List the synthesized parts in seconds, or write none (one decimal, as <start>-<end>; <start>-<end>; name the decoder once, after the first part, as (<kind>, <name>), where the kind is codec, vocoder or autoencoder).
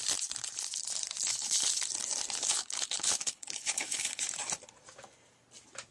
1.3-1.8 (codec, HILCodec); 2.6-4.2